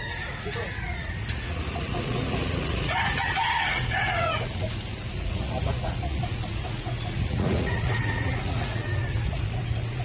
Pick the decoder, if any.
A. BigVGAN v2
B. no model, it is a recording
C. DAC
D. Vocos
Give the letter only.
D